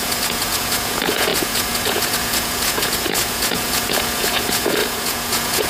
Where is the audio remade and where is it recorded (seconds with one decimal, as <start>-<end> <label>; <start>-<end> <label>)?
0.0-5.7 remade